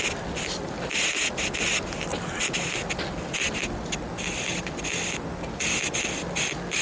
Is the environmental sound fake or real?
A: real